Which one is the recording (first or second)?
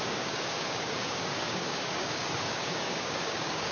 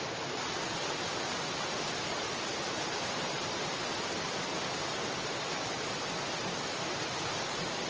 second